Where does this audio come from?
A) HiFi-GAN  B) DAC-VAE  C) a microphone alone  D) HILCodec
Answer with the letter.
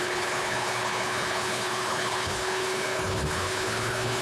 D